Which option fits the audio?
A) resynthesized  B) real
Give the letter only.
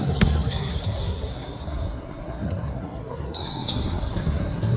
A